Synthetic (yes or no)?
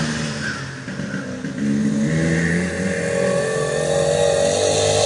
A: no